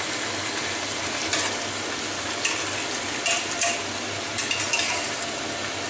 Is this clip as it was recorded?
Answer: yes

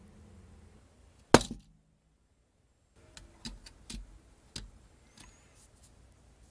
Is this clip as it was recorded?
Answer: yes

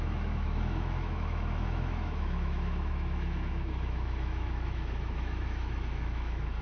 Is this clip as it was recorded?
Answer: no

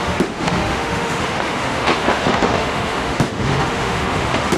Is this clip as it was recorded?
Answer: no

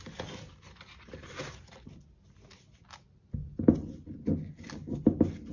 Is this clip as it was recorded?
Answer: yes